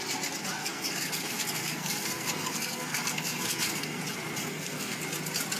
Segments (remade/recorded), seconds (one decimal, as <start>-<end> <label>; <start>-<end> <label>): 0.0-0.6 recorded; 0.6-4.0 remade; 4.0-4.4 recorded; 4.4-5.0 remade; 5.0-5.6 recorded